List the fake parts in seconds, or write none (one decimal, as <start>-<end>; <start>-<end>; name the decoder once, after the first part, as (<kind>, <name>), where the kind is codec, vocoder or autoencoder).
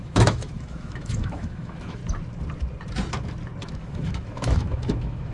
0.0-2.0 (autoencoder, DAC-VAE); 3.6-5.3